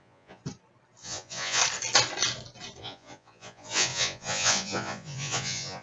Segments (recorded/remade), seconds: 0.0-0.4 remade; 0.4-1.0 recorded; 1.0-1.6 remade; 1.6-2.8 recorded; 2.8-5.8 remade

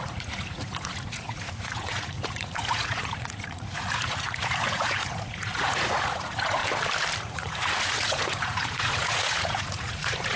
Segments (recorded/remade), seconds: 0.0-6.6 remade; 6.6-7.2 recorded; 7.2-10.4 remade

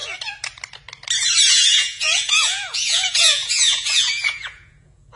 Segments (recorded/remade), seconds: 0.0-1.5 recorded; 1.5-5.2 remade

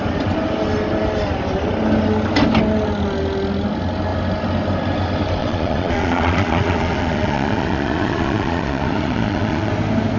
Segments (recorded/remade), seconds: 0.0-5.4 recorded; 5.4-9.7 remade; 9.7-10.2 recorded

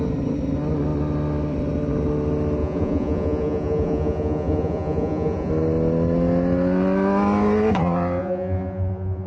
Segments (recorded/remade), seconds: 0.0-2.6 recorded; 2.6-5.5 remade; 5.5-8.2 recorded; 8.2-9.3 remade

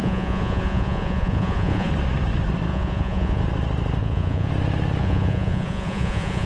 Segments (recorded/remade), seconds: 0.0-1.9 remade; 1.9-2.7 recorded; 2.7-3.4 remade; 3.4-4.0 recorded; 4.0-4.5 remade; 4.5-5.0 recorded; 5.0-6.5 remade

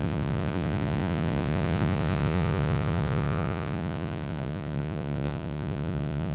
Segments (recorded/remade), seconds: 0.0-6.3 remade

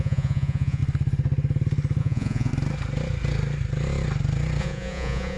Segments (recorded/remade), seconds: 0.0-0.8 remade; 0.8-2.0 recorded; 2.0-2.5 remade; 2.5-4.6 recorded; 4.6-5.4 remade